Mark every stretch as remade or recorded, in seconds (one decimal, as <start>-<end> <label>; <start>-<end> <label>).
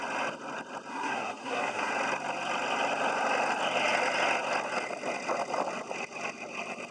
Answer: 0.0-0.9 recorded; 0.9-1.9 remade; 1.9-6.9 recorded